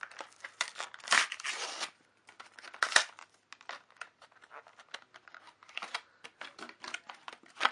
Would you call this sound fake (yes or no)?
no